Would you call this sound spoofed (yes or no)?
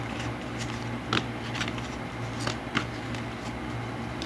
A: no